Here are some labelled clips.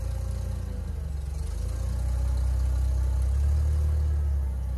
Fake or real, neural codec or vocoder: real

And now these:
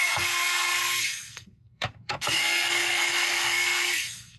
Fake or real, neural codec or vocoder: fake, codec, SNAC